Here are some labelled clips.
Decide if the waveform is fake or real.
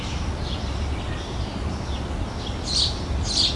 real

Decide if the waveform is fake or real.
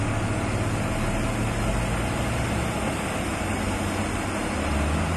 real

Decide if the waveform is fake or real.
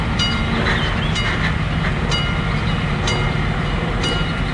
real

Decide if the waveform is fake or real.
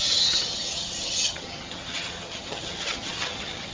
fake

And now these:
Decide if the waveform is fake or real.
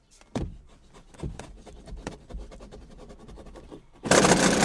fake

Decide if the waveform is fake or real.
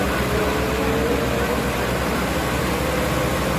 real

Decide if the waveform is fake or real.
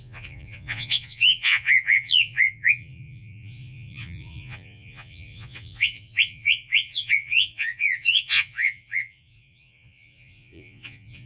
fake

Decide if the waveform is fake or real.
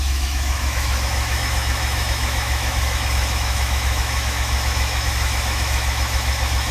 fake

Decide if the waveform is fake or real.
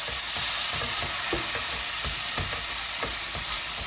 real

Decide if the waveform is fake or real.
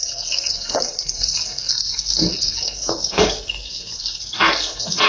fake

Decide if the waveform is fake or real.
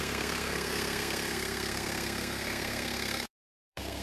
fake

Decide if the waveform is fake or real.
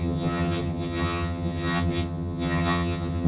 fake